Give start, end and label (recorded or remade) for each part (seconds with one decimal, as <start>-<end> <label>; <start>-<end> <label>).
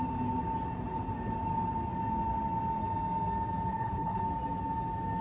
0.0-3.7 recorded; 3.7-4.2 remade; 4.2-5.2 recorded